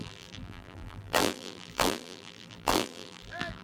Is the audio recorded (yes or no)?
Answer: no